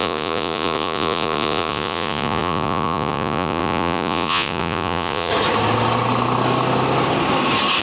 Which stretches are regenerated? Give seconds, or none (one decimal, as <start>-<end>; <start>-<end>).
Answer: 0.0-5.3